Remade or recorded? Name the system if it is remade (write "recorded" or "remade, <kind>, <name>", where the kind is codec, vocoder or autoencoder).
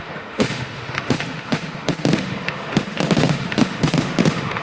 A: remade, autoencoder, DAC-VAE